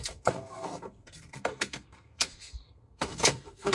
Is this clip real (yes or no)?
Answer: no